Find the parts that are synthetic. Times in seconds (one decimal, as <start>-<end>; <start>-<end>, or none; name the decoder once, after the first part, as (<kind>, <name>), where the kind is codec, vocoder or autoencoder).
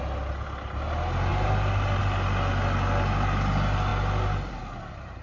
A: none